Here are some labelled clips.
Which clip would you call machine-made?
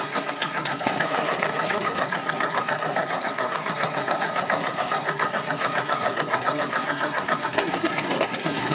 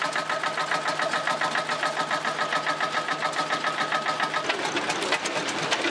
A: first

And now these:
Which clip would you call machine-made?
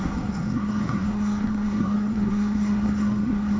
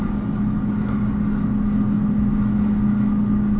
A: first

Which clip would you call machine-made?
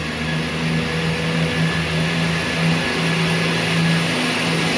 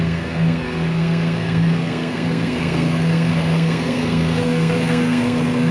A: second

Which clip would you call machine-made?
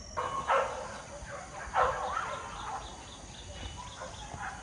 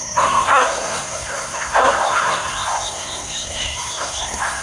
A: second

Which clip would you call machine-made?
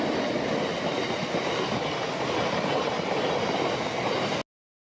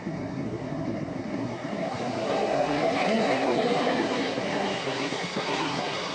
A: second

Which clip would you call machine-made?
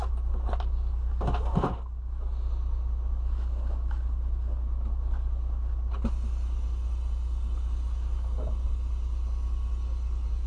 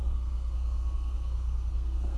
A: second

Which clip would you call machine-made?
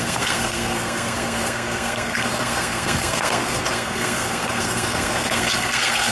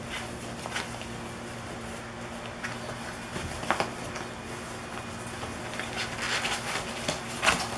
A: first